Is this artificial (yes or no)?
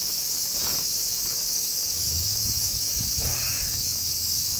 yes